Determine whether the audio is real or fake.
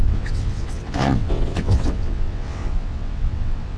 fake